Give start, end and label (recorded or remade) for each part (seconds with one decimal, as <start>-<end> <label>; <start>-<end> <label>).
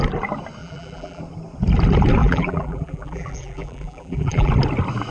0.0-0.6 recorded; 0.6-1.2 remade; 1.2-2.2 recorded; 2.2-4.5 remade; 4.5-5.1 recorded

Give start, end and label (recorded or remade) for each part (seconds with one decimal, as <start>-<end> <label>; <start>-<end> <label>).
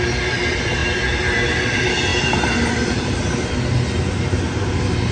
0.0-2.1 recorded; 2.1-3.5 remade; 3.5-5.1 recorded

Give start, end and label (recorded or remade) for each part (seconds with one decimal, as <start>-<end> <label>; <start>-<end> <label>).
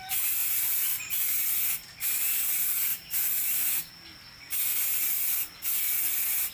0.0-0.4 recorded; 0.4-1.7 remade; 1.7-2.9 recorded; 2.9-3.9 remade; 3.9-6.5 recorded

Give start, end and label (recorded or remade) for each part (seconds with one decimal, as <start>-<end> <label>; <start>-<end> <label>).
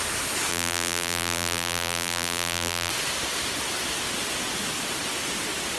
0.0-0.5 recorded; 0.5-2.9 remade; 2.9-5.8 recorded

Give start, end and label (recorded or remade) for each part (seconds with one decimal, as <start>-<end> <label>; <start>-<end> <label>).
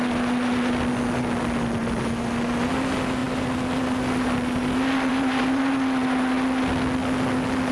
0.0-5.1 recorded; 5.1-5.6 remade; 5.6-7.7 recorded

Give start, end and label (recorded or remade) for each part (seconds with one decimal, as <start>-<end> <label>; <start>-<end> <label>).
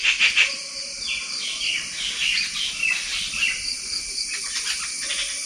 0.0-2.2 recorded; 2.2-2.7 remade; 2.7-3.1 recorded; 3.1-3.6 remade; 3.6-5.5 recorded